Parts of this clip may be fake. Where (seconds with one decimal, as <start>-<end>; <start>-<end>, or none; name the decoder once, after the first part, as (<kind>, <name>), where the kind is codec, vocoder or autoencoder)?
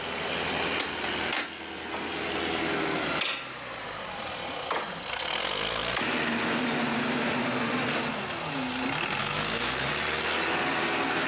9.2-9.9 (autoencoder, DAC-VAE)